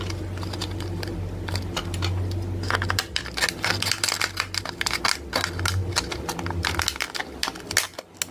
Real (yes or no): yes